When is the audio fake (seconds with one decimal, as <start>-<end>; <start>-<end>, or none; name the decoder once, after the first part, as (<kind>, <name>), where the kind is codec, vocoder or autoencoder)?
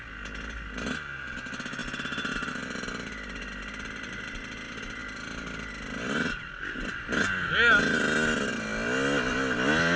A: none